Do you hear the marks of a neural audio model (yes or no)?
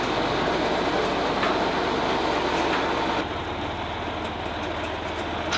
no